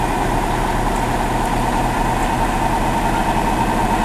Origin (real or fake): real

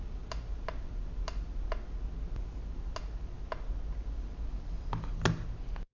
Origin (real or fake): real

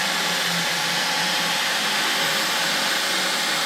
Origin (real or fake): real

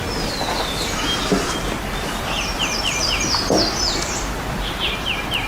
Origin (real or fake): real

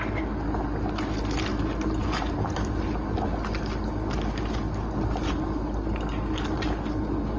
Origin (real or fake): real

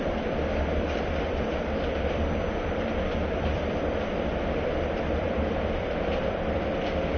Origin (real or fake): fake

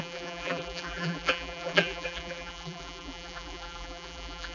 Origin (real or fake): fake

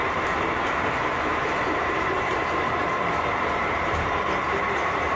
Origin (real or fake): fake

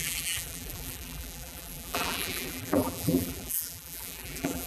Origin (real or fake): fake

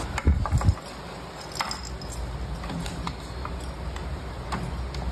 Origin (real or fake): real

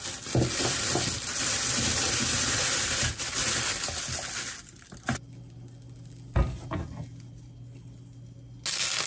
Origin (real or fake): real